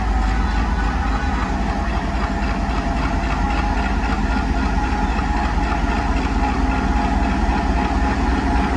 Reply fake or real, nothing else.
real